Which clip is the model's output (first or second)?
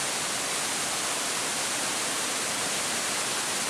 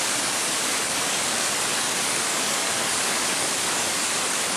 second